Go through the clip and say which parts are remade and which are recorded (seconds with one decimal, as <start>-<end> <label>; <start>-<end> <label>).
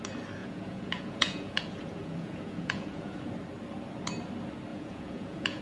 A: 0.0-0.4 recorded; 0.4-3.2 remade; 3.2-4.7 recorded; 4.7-5.6 remade